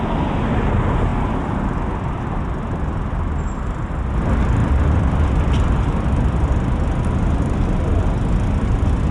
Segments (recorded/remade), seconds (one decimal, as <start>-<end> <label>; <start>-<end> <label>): 0.0-9.1 recorded